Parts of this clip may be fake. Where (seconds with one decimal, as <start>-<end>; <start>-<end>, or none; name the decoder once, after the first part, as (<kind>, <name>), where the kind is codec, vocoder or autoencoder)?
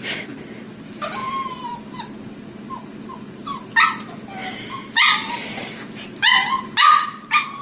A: 1.2-1.8 (vocoder, BigVGAN v2); 4.4-6.2